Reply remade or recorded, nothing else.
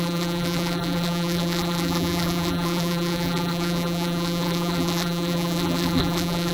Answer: remade